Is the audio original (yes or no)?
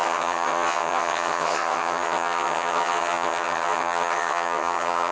no